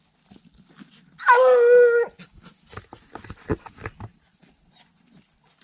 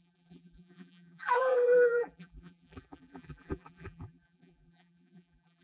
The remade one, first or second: second